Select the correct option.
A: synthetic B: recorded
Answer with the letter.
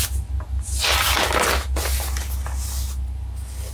B